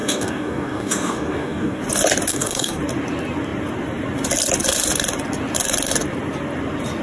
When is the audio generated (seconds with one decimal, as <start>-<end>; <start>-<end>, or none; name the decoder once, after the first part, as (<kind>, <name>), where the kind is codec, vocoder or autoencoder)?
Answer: 0.0-1.8 (codec, DAC); 2.3-2.8